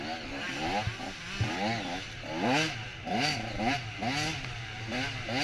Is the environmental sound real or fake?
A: real